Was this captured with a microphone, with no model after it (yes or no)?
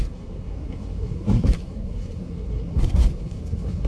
no